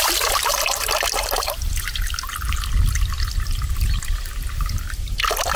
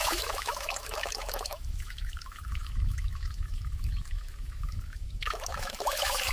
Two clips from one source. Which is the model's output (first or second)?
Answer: second